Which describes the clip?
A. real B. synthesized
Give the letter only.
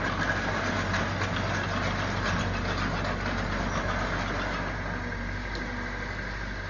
A